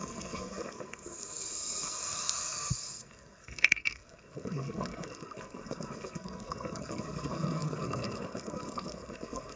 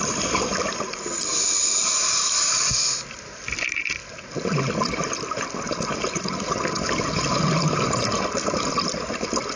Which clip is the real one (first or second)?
second